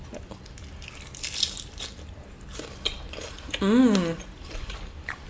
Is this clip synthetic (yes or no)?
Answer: yes